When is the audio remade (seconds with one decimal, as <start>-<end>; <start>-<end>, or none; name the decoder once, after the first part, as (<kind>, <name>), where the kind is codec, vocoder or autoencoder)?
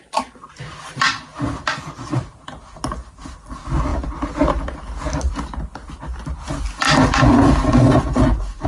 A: none